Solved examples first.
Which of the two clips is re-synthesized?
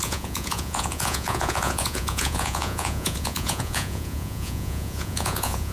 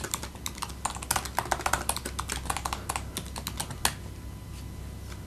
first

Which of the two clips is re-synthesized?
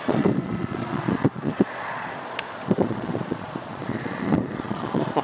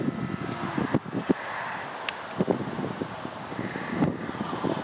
first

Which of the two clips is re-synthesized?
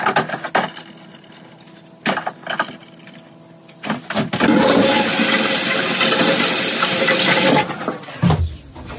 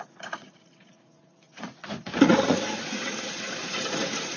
second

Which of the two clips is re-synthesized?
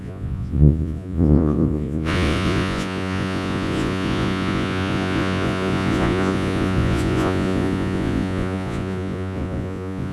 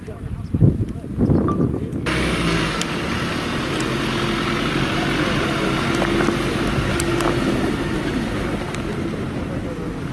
first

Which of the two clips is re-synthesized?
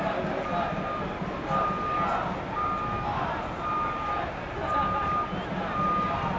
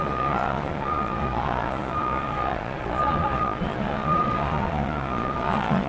second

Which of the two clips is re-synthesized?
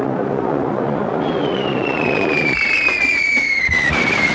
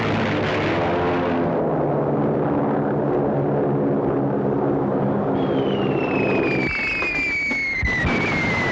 first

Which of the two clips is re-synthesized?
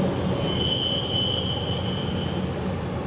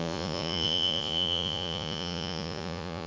second